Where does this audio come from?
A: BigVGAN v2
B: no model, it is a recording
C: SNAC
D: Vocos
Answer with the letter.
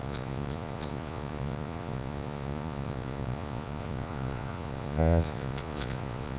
D